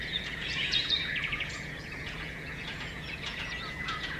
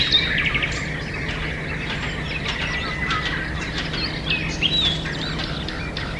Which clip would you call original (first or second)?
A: second